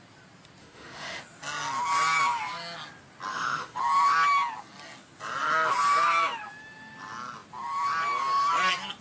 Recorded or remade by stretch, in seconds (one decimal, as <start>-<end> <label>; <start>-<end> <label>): 0.0-0.6 recorded; 0.6-1.2 remade; 1.2-3.3 recorded; 3.3-3.8 remade; 3.8-9.0 recorded